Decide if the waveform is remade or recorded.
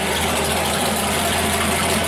recorded